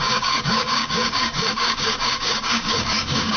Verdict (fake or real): fake